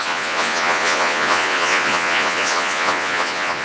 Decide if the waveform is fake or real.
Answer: fake